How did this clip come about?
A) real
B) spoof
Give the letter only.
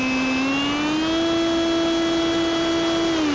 A